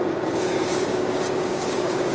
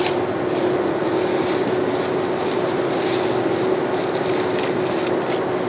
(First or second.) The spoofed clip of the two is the first